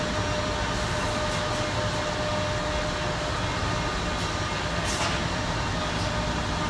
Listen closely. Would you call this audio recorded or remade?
recorded